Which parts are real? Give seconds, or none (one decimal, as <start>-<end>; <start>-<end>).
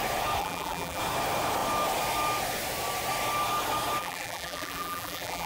0.0-0.4; 1.0-4.0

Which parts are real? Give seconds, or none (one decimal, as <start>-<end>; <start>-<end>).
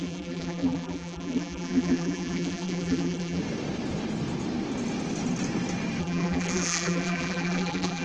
3.4-6.0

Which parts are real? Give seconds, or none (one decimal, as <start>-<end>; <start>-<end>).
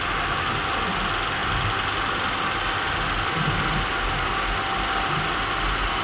0.0-6.0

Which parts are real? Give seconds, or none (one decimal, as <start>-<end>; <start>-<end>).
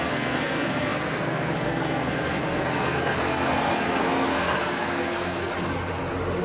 5.5-6.4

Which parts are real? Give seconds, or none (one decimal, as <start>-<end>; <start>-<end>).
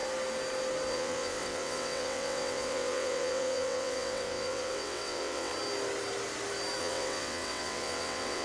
0.0-0.9; 5.5-6.8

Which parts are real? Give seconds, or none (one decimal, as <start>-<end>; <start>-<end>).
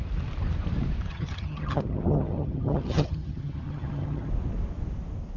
0.0-1.1; 4.3-5.4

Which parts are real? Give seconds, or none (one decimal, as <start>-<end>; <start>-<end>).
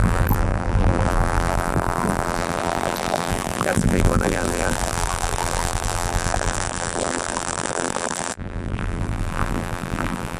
none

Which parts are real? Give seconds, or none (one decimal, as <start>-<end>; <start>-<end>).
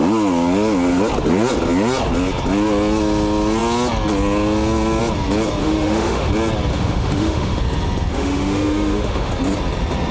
0.0-5.6; 6.3-6.7; 7.6-8.1; 9.3-10.1